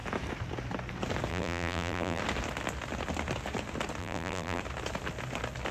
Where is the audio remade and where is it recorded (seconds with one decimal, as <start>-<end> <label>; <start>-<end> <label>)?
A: 0.0-1.3 recorded; 1.3-2.2 remade; 2.2-4.0 recorded; 4.0-4.6 remade; 4.6-5.7 recorded